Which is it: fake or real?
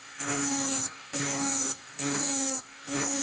fake